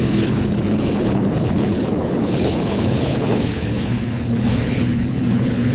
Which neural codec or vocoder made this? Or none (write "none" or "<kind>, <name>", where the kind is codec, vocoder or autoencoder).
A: codec, HILCodec